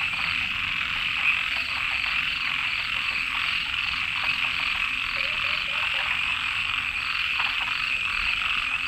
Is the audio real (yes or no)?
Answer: yes